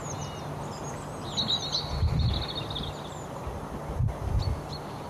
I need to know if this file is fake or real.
real